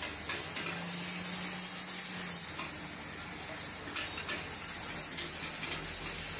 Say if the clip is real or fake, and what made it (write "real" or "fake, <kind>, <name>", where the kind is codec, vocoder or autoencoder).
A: real